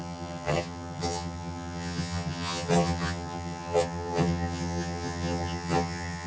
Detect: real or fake fake